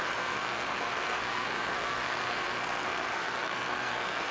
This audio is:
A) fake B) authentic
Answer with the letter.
A